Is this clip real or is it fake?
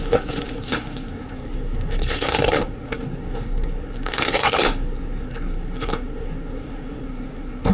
fake